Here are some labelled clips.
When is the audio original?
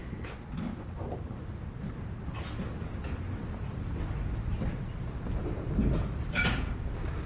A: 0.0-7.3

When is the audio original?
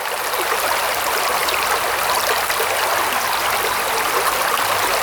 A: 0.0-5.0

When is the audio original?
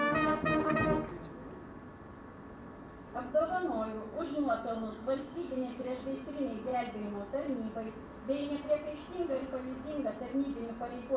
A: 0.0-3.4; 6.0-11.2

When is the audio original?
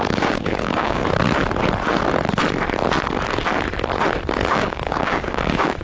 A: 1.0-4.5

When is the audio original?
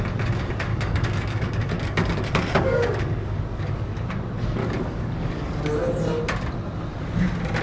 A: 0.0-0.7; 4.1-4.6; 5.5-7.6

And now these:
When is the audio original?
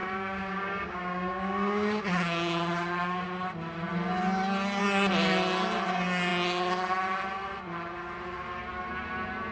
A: 2.0-9.5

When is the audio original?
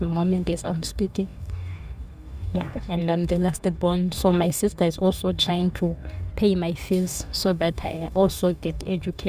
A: 6.3-6.9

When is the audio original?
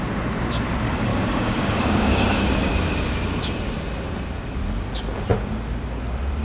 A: 0.0-1.1; 2.7-6.4